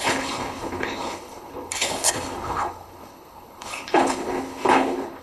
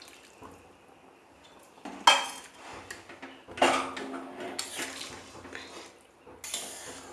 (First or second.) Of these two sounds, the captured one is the second